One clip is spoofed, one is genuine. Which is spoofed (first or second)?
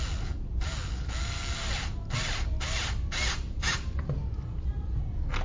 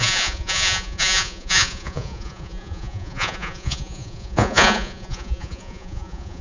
second